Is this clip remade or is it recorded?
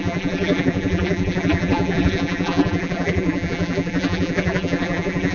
remade